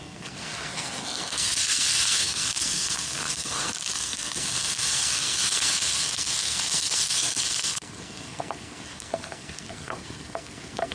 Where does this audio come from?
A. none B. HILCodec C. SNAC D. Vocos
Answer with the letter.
C